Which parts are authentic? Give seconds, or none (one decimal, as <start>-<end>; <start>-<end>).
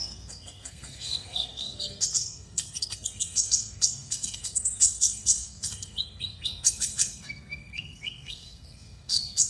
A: none